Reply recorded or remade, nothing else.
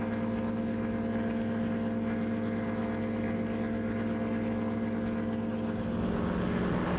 recorded